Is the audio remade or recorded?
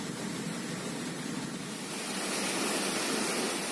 recorded